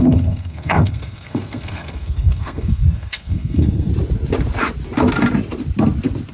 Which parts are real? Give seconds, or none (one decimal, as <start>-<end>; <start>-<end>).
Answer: 3.9-6.3